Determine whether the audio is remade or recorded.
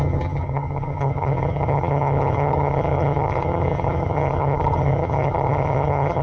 remade